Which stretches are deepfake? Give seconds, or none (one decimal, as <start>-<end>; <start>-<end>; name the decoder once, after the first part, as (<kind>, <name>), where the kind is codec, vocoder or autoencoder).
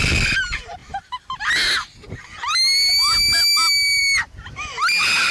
none